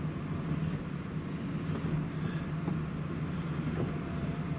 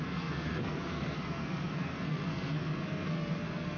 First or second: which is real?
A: first